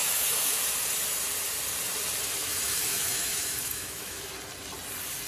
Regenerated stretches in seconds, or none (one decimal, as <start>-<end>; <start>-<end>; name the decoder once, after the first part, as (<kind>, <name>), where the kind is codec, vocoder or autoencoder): 0.0-0.6 (autoencoder, DAC-VAE); 2.4-4.2